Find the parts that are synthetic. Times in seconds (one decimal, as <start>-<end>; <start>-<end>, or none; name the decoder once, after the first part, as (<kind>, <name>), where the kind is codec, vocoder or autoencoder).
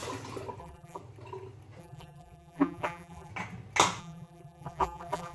0.6-1.0 (vocoder, BigVGAN v2); 1.8-3.3; 4.0-5.3